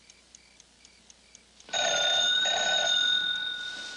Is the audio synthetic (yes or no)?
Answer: no